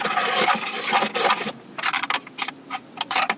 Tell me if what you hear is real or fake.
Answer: real